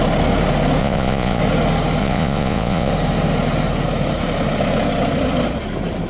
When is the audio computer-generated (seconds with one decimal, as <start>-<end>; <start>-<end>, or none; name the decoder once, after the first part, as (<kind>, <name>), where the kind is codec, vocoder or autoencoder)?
0.8-1.4 (vocoder, Vocos); 2.0-2.9